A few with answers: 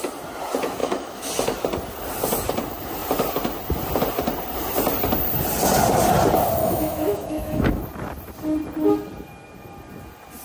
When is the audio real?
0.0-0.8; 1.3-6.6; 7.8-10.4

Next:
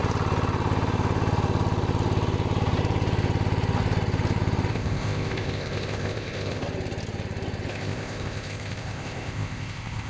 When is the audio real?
0.0-4.7; 6.6-7.7